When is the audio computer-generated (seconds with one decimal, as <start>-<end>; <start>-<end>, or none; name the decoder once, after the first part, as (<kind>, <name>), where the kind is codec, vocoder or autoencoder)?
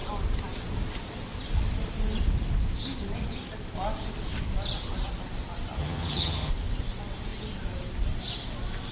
5.8-6.5 (vocoder, HiFi-GAN)